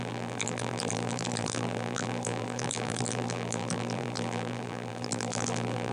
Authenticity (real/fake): fake